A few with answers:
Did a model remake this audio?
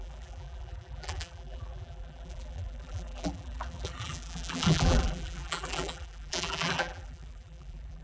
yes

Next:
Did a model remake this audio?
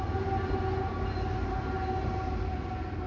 no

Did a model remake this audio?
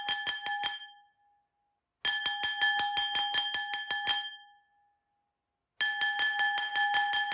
no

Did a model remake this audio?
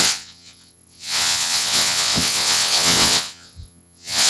yes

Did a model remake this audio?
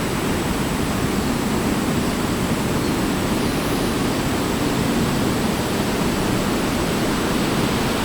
no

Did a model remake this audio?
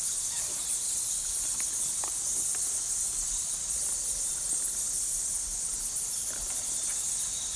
no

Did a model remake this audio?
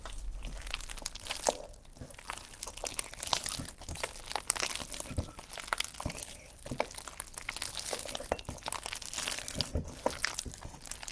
no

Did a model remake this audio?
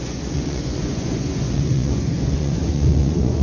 yes